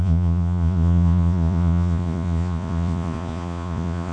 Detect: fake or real fake